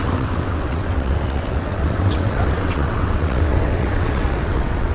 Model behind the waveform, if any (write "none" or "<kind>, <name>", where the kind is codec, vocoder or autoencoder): vocoder, WaveNeXt